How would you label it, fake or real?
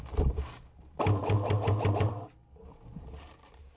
fake